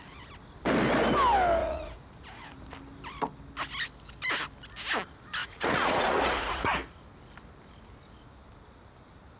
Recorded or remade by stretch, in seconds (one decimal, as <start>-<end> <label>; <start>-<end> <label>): 0.0-1.6 recorded; 1.6-2.5 remade; 2.5-5.4 recorded; 5.4-6.7 remade; 6.7-9.4 recorded